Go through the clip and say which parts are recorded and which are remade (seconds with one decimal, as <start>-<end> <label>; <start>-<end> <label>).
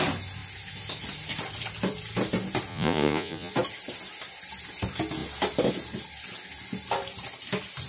0.0-2.7 recorded; 2.7-3.5 remade; 3.5-7.9 recorded